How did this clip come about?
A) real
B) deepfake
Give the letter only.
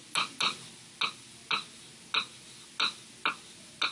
A